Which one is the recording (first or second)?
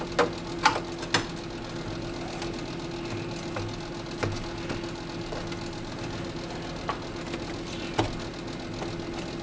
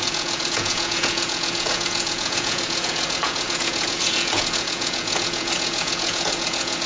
first